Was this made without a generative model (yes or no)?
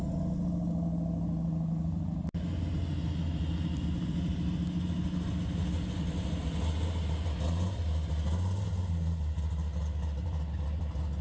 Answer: yes